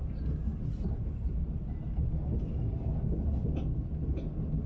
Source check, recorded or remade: recorded